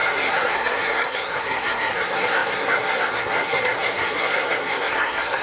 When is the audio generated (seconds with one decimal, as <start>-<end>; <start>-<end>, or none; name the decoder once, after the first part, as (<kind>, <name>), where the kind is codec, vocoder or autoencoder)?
0.0-5.4 (codec, SNAC)